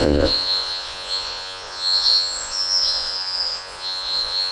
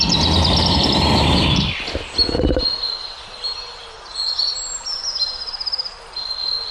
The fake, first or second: first